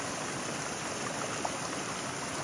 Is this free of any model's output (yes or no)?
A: yes